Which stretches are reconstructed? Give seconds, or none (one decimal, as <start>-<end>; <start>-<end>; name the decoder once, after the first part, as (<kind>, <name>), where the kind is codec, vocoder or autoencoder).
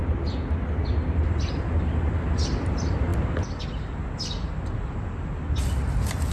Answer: none